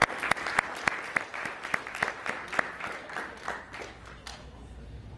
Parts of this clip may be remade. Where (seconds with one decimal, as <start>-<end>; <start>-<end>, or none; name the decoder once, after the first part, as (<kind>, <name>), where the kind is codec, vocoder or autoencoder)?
none